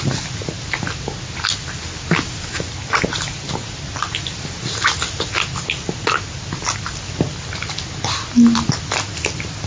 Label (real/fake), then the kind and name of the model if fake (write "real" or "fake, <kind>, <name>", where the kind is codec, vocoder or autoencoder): real